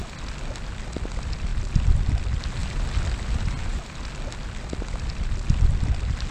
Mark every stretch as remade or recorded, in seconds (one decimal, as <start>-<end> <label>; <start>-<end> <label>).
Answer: 0.0-6.3 recorded